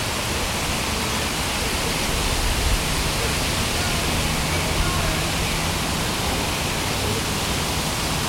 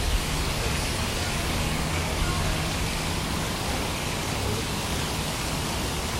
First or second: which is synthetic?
second